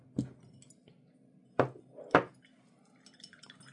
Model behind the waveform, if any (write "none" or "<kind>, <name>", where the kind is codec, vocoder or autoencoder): none